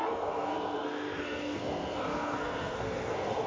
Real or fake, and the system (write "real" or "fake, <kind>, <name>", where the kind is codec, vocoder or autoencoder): fake, codec, SNAC